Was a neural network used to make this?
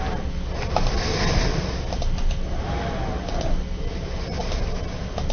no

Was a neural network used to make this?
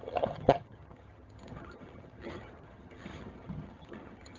yes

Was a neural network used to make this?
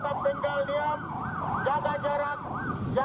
no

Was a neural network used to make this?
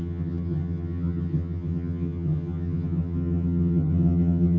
yes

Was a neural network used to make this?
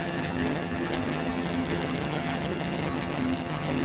yes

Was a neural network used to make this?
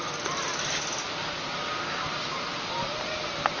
no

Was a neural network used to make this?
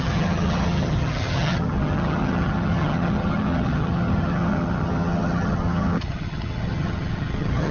yes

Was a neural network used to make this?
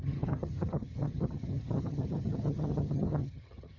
yes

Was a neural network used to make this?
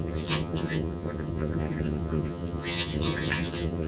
yes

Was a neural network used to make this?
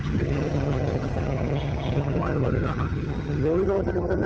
yes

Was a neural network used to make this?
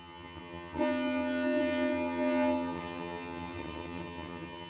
yes